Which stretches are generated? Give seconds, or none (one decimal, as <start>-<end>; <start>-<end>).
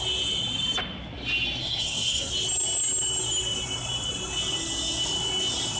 1.6-2.3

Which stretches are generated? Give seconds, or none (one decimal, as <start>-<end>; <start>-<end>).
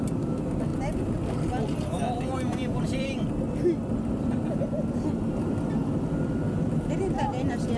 2.5-3.4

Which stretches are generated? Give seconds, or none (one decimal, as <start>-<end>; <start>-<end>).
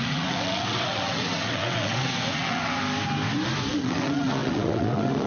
0.0-2.8; 3.7-5.3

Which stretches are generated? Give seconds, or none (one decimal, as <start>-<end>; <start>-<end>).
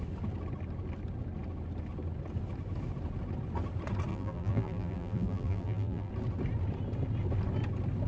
4.1-6.1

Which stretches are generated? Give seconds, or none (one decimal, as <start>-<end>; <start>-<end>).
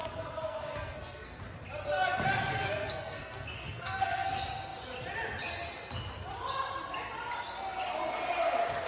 0.0-1.4; 2.5-4.3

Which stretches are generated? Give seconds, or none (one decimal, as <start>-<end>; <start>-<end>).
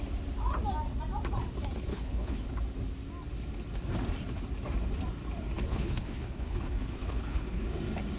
1.9-2.5; 5.7-7.6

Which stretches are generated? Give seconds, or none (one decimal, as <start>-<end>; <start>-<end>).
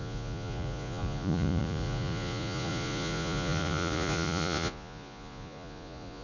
0.0-6.2